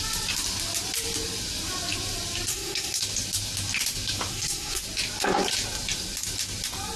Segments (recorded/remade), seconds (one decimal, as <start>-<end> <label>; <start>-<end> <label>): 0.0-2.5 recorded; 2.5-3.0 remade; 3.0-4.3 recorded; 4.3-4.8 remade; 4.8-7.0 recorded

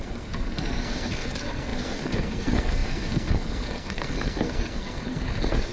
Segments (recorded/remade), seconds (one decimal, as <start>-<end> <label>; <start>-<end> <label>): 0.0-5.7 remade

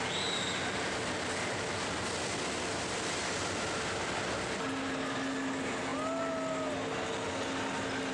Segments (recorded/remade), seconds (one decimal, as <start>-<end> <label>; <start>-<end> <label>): 0.0-8.1 recorded

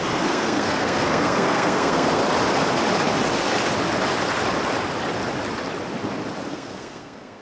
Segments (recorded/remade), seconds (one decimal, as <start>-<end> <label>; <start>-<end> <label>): 0.0-2.2 remade; 2.2-6.5 recorded; 6.5-7.4 remade

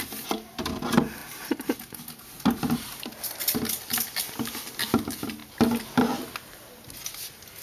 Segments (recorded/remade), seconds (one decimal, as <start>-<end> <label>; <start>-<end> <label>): 0.0-7.6 recorded

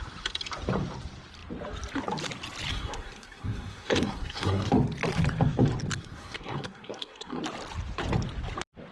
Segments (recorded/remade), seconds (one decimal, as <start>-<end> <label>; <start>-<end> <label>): 0.0-2.7 recorded; 2.7-4.7 remade; 4.7-6.0 recorded; 6.0-7.4 remade; 7.4-8.9 recorded

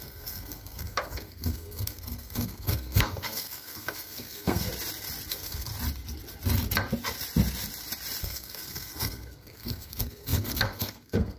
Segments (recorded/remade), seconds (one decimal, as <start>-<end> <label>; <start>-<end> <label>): 0.0-4.7 remade; 4.7-5.3 recorded; 5.3-5.7 remade; 5.7-8.2 recorded; 8.2-11.4 remade

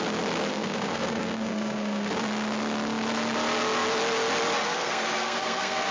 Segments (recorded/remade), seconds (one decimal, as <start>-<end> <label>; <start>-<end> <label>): 0.0-0.5 recorded; 0.5-2.1 remade; 2.1-4.6 recorded; 4.6-5.9 remade